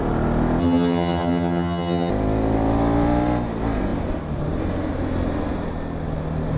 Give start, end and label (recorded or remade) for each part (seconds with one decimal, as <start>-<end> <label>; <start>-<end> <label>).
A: 0.0-0.6 recorded; 0.6-2.1 remade; 2.1-6.6 recorded